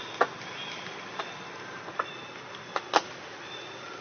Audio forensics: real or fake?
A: real